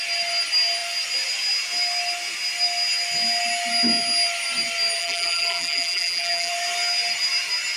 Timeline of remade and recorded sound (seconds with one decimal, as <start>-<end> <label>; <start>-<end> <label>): 0.0-5.0 recorded; 5.0-6.5 remade; 6.5-7.8 recorded